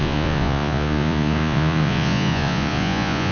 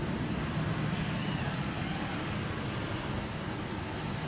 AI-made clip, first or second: first